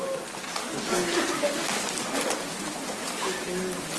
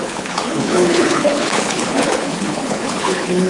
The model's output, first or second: second